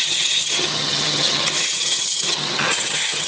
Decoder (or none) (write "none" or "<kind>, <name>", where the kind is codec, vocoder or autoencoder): vocoder, HiFi-GAN